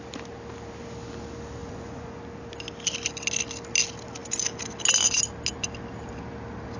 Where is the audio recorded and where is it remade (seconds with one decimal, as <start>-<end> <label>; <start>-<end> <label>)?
0.0-1.6 recorded; 1.6-2.2 remade; 2.2-6.8 recorded